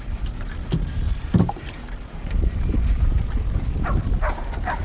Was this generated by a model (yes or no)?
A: yes